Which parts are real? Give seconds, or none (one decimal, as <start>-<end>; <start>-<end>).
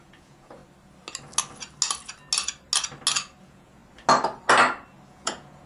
0.6-3.4; 3.8-5.1